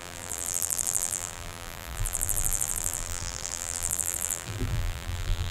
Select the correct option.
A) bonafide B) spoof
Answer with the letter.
B